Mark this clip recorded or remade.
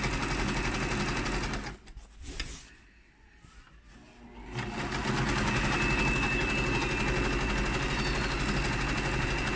recorded